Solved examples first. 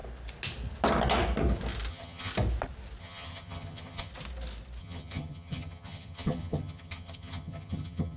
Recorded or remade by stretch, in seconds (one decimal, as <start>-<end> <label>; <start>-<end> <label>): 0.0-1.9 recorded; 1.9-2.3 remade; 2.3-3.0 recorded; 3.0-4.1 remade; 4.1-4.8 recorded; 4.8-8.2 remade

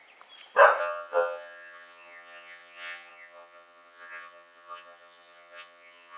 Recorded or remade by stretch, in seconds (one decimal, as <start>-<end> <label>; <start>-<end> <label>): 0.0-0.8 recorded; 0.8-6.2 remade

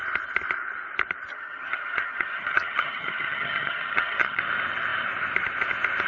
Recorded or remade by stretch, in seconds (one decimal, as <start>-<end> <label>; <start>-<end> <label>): 0.0-1.3 recorded; 1.3-4.4 remade; 4.4-6.1 recorded